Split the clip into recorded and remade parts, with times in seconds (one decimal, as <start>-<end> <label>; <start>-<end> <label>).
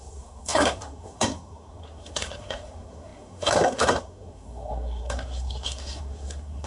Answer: 0.0-6.7 remade